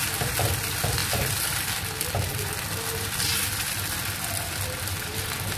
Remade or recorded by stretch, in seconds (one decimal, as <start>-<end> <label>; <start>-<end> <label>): 0.0-5.6 recorded